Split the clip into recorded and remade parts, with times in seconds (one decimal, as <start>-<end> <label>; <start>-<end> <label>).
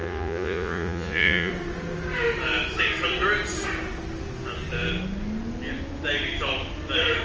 0.0-1.5 remade; 1.5-7.2 recorded